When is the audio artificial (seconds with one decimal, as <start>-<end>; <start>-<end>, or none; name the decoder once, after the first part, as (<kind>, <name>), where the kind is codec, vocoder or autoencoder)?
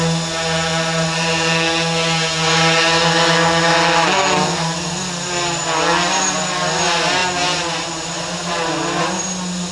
none